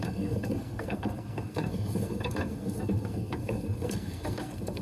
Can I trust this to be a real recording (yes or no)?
no